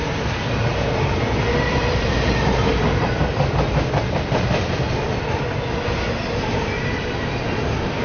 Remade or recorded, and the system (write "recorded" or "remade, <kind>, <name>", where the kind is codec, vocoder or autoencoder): recorded